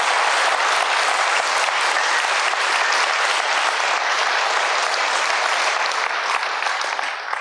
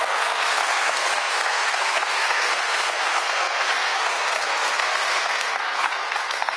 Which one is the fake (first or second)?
second